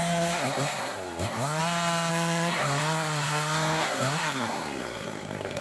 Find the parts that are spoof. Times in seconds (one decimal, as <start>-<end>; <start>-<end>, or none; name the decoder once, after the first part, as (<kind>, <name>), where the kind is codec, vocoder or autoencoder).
0.0-1.6 (codec, SNAC); 2.1-5.6